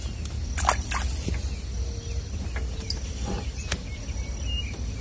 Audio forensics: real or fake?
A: real